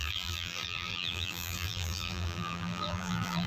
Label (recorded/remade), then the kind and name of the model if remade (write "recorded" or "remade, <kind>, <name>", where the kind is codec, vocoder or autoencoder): remade, vocoder, BigVGAN v2